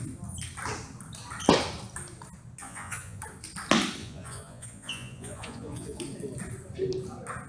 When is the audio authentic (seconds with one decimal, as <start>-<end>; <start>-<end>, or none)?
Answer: 0.0-2.6; 3.2-4.0; 6.0-7.5